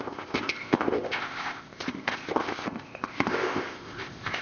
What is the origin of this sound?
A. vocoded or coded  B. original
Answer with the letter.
A